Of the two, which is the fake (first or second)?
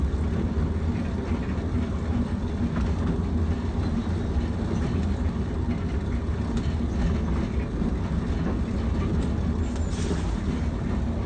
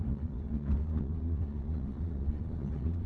second